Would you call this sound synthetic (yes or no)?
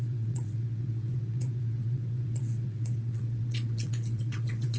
yes